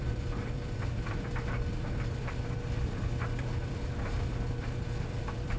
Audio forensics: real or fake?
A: fake